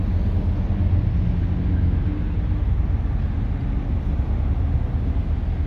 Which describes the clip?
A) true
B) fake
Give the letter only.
A